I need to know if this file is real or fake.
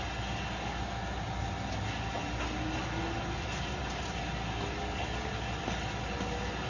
real